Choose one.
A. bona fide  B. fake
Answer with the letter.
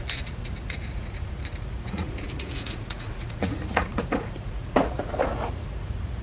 B